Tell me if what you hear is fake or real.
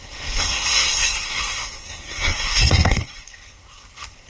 fake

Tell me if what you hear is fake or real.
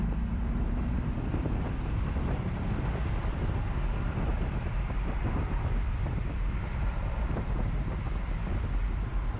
fake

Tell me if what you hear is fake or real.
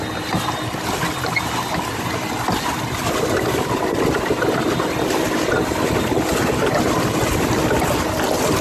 real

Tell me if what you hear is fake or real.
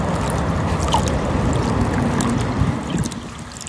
real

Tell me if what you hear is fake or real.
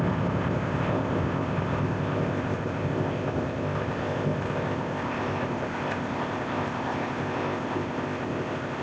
fake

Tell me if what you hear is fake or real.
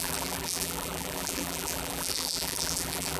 fake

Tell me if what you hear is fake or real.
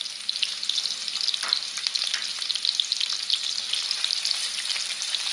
real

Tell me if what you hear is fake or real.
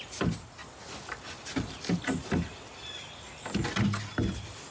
real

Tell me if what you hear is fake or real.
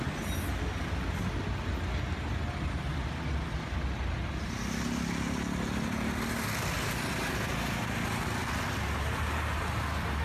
real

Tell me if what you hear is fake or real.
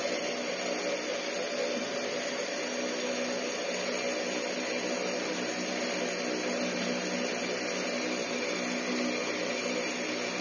real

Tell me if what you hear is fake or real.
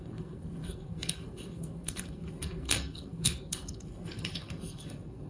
fake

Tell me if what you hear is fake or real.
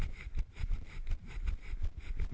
real